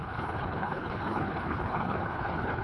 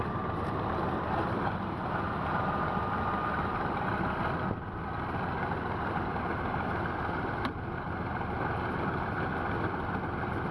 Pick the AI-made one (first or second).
first